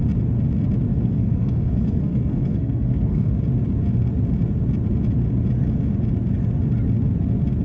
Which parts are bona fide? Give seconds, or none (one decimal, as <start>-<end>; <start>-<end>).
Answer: 0.0-0.9; 3.3-7.6